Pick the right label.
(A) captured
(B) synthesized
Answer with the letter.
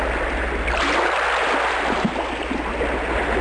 A